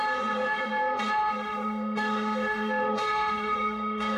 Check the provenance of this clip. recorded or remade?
remade